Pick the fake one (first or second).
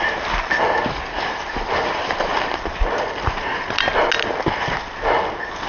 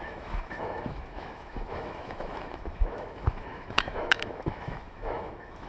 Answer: second